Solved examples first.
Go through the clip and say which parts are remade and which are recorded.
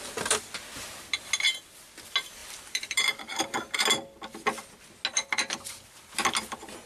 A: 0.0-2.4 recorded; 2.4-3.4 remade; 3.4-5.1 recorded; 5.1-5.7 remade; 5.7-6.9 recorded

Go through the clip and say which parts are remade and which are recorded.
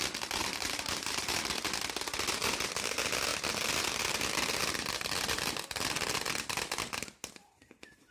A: 0.0-0.4 recorded; 0.4-1.4 remade; 1.4-8.1 recorded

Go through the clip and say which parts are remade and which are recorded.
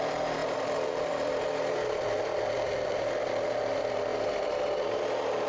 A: 0.0-4.1 remade; 4.1-5.5 recorded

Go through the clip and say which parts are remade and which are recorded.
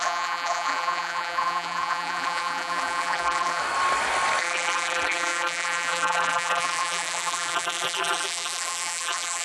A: 0.0-3.6 remade; 3.6-4.4 recorded; 4.4-9.4 remade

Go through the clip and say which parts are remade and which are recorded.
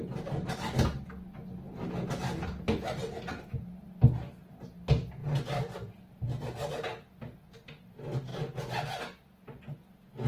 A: 0.0-10.3 recorded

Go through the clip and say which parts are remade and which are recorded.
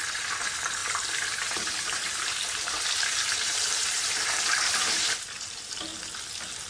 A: 0.0-5.9 remade; 5.9-6.7 recorded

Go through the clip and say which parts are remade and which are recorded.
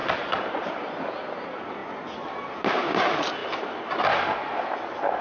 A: 0.0-0.9 remade; 0.9-5.2 recorded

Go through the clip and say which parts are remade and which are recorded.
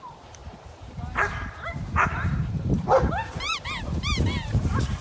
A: 0.0-5.0 remade